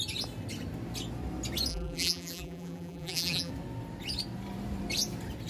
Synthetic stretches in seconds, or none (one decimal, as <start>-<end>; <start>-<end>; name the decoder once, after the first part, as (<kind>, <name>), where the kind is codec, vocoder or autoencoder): 1.7-3.5 (vocoder, BigVGAN v2)